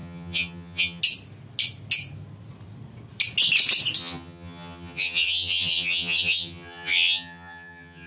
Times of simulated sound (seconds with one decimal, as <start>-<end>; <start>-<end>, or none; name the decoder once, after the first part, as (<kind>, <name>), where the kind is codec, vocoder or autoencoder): 0.0-1.0 (vocoder, HiFi-GAN); 4.0-8.1